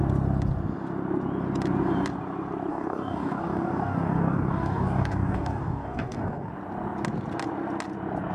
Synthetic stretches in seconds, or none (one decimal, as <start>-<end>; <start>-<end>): 2.7-6.5